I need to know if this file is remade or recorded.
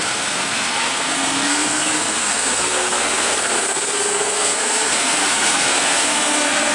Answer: remade